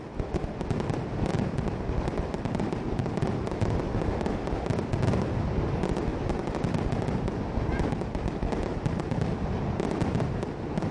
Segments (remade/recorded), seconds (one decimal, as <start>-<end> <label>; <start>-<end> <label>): 0.0-1.3 recorded; 1.3-2.4 remade; 2.4-6.1 recorded; 6.1-7.4 remade; 7.4-10.9 recorded